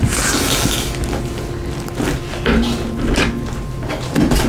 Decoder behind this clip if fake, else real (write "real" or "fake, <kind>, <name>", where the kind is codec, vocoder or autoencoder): real